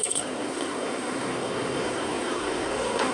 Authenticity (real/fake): fake